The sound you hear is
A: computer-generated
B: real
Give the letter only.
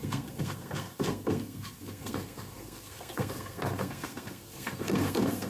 A